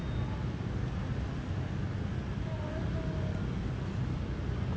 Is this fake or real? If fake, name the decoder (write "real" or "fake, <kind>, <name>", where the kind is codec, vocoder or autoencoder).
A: real